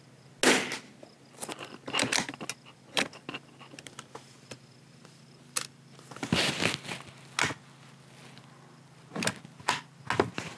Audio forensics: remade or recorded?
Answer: recorded